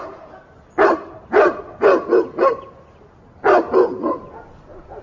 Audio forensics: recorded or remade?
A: recorded